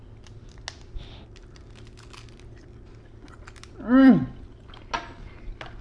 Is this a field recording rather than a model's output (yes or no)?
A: yes